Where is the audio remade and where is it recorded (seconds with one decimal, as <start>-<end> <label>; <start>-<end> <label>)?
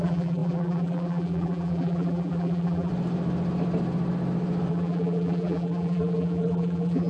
0.0-2.9 remade; 2.9-4.7 recorded; 4.7-7.1 remade